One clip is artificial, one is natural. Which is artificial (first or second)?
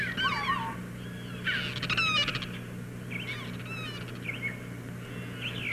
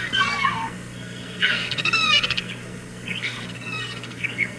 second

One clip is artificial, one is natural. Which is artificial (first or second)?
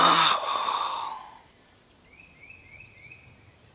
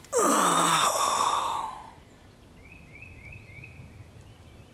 second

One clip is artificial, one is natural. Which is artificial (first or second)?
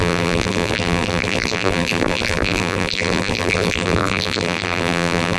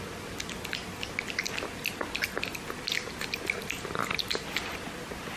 first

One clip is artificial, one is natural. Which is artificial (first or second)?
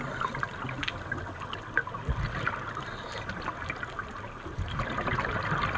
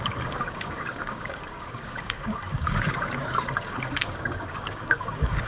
second